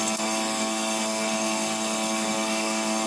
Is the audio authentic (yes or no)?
no